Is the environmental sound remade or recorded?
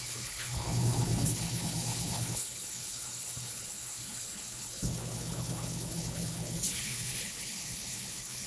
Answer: remade